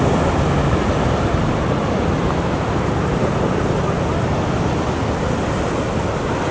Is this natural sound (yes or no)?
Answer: yes